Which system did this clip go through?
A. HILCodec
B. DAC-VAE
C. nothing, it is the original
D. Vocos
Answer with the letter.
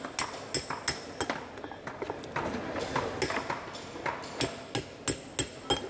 C